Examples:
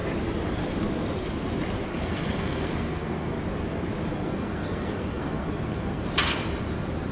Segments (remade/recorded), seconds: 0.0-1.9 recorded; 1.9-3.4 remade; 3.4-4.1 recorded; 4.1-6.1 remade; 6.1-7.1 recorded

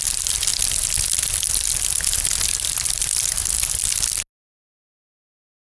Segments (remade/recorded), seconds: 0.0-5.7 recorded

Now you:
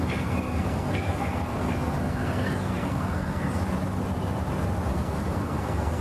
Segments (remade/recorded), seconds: 0.0-3.6 remade; 3.6-4.9 recorded; 4.9-6.0 remade

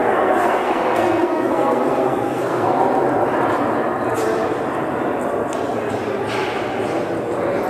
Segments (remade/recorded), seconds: 0.0-2.8 remade; 2.8-7.7 recorded

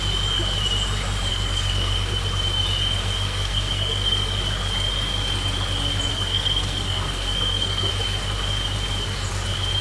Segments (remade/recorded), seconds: 0.0-1.3 recorded; 1.3-2.1 remade; 2.1-3.0 recorded; 3.0-4.4 remade; 4.4-6.1 recorded; 6.1-7.9 remade; 7.9-9.8 recorded

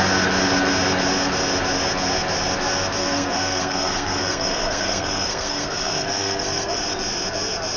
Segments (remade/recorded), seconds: 0.0-3.0 recorded; 3.0-6.8 remade; 6.8-7.8 recorded